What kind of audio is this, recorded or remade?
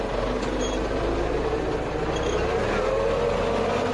recorded